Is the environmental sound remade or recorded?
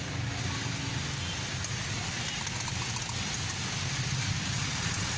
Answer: recorded